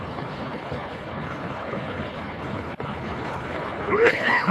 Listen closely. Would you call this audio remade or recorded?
remade